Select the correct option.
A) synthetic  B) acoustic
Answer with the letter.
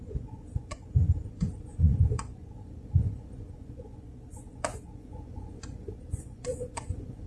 A